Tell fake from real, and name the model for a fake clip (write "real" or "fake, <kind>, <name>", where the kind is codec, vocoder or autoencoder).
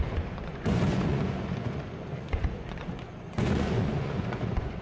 fake, vocoder, Vocos